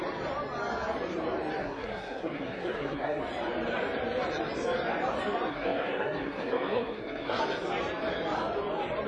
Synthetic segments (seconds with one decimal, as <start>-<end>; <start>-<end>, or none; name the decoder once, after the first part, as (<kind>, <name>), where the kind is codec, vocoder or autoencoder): 1.6-3.2 (codec, SNAC); 5.5-7.4

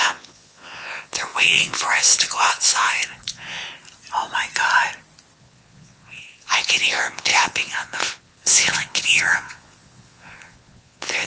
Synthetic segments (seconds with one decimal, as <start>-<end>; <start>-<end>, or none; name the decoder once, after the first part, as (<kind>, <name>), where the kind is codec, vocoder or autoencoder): 0.0-3.6 (vocoder, Vocos); 5.4-11.3